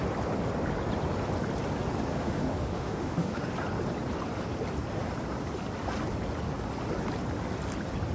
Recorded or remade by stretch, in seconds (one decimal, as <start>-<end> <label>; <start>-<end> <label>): 0.0-2.1 recorded; 2.1-3.5 remade; 3.5-8.1 recorded